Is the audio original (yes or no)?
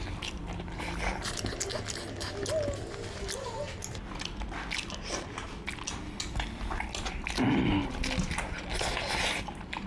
yes